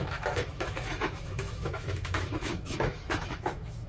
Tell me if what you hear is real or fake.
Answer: fake